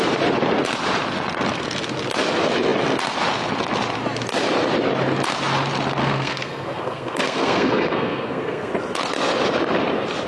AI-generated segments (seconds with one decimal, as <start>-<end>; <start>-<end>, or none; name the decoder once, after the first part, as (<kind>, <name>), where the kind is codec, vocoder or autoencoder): 6.0-8.7 (codec, SNAC)